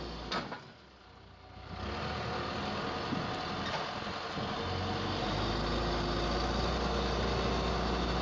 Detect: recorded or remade recorded